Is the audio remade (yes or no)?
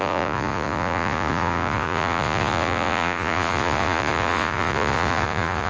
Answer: yes